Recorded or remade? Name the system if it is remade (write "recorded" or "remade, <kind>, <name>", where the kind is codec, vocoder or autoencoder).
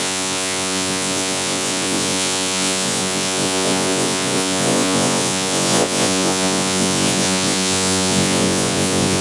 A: remade, vocoder, Vocos